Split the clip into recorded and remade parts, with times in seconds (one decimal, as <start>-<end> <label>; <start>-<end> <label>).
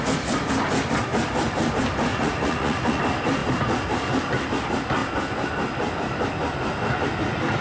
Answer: 0.0-2.1 recorded; 2.1-3.0 remade; 3.0-7.6 recorded